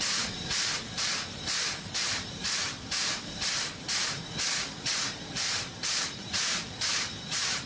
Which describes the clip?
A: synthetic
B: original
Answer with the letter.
A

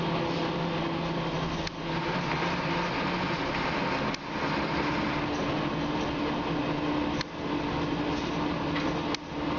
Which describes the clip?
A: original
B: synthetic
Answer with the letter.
A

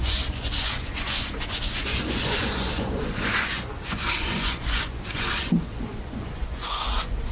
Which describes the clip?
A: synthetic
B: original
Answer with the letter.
A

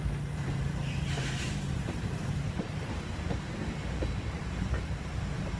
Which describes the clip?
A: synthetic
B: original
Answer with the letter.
A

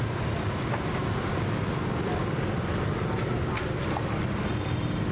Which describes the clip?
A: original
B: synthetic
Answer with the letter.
A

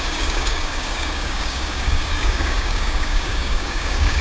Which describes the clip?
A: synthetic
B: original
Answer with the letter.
A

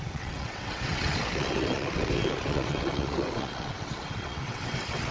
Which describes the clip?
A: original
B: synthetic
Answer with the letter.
B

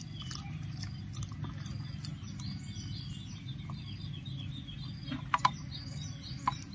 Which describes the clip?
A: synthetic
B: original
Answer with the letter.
B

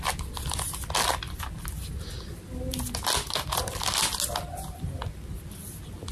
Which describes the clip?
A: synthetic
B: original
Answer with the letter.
B